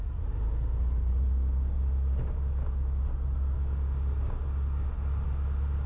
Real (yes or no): yes